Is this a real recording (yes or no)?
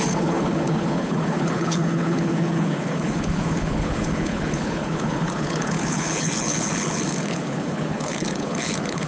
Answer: no